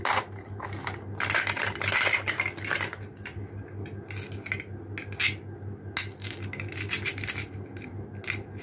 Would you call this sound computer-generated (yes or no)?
no